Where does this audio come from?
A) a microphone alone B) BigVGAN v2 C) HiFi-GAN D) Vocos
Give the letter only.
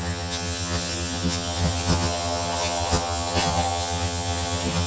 C